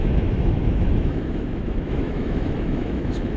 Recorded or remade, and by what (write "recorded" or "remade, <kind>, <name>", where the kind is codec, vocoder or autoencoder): remade, autoencoder, DAC-VAE